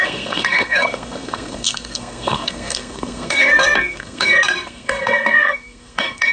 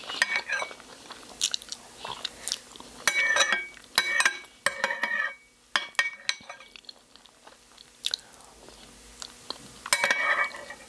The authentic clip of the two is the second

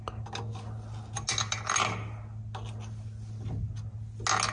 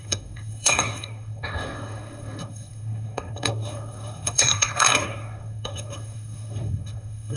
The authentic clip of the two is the first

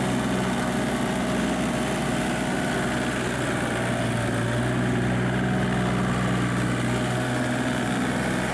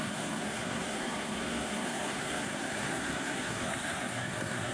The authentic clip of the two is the first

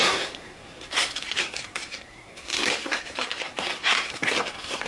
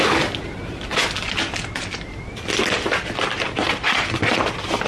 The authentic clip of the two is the second